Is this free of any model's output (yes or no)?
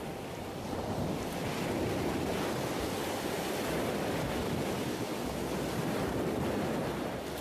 yes